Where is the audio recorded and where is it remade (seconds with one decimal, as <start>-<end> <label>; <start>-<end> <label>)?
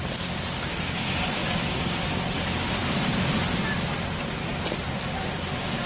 0.0-5.9 recorded